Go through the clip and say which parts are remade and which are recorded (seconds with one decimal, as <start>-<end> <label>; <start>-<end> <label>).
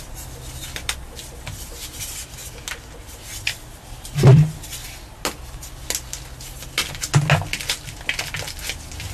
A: 0.0-9.1 recorded